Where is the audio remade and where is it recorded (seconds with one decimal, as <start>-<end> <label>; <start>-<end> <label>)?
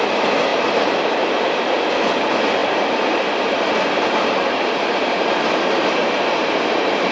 0.0-0.5 recorded; 0.5-1.9 remade; 1.9-2.6 recorded; 2.6-7.1 remade